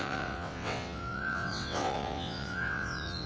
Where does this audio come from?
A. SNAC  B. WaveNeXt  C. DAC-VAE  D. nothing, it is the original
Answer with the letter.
B